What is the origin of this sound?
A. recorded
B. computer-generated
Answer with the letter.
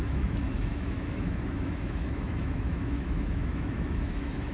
B